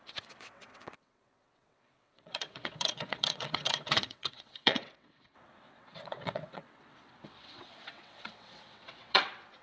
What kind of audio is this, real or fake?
fake